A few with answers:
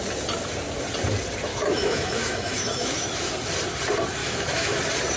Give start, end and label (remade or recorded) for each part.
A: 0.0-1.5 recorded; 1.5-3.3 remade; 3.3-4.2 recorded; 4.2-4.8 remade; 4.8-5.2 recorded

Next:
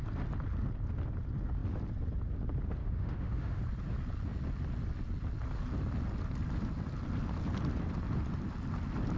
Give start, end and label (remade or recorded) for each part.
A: 0.0-2.8 recorded; 2.8-3.6 remade; 3.6-9.2 recorded

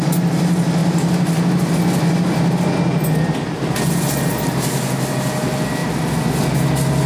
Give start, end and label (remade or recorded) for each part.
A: 0.0-7.1 recorded

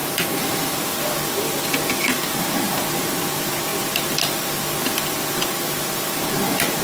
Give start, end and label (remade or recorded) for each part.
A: 0.0-0.8 remade; 0.8-6.8 recorded

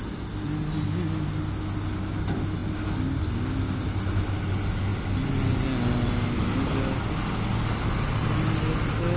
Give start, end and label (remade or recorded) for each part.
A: 0.0-9.2 recorded

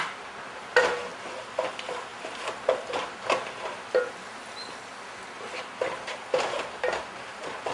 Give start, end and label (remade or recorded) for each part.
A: 0.0-7.7 recorded

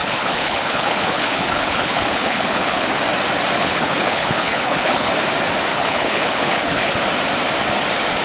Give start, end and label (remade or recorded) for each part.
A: 0.0-2.9 remade; 2.9-3.6 recorded; 3.6-5.1 remade; 5.1-5.7 recorded; 5.7-6.9 remade; 6.9-8.2 recorded

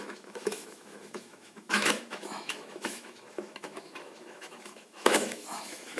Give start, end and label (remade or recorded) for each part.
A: 0.0-6.0 remade